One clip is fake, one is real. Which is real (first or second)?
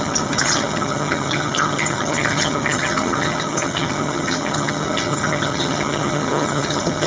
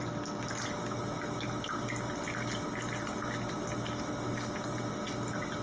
second